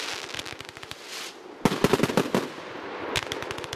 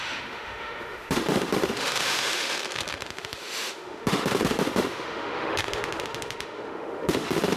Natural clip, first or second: first